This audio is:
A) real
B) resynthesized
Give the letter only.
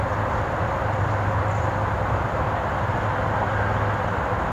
A